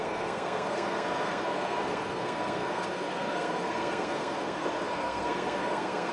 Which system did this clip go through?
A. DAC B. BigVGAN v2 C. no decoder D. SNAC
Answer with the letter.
D